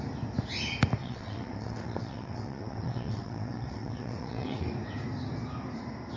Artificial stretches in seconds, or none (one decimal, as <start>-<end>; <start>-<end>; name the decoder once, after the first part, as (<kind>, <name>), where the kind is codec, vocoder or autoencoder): 1.0-4.7 (vocoder, WaveNeXt)